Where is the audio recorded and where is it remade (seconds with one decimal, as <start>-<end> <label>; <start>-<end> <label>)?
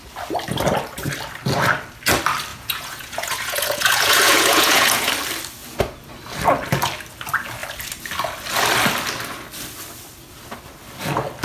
0.0-2.5 recorded; 2.5-5.1 remade; 5.1-11.4 recorded